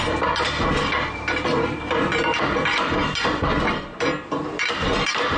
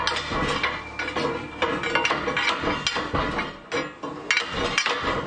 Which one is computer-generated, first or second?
first